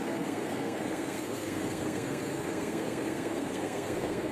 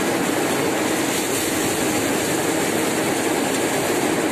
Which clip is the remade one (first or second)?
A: first